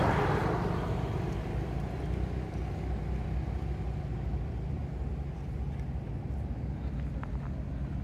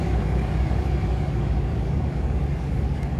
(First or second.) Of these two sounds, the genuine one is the first